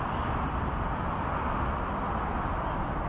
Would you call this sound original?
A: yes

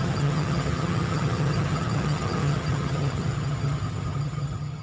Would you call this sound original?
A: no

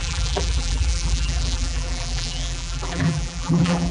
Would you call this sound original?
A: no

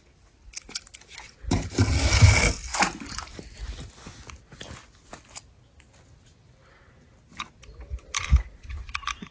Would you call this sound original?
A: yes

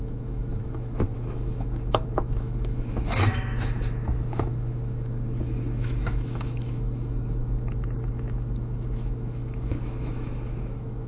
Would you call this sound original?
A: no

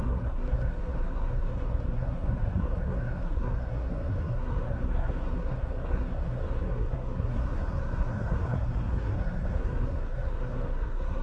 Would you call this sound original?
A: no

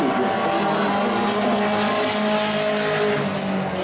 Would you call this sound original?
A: yes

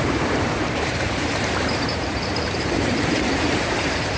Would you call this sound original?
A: no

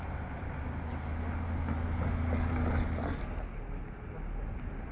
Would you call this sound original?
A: yes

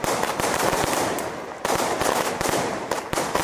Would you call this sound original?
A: no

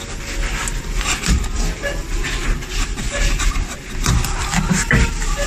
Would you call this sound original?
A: yes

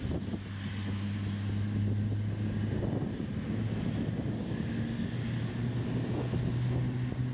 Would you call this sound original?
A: yes